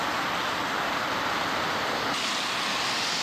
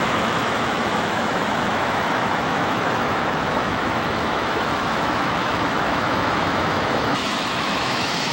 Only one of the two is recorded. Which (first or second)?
first